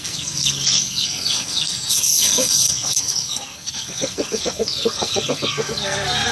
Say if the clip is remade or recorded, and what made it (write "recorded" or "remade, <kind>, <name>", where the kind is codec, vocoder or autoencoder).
remade, codec, SNAC